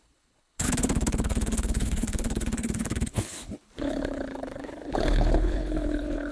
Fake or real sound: fake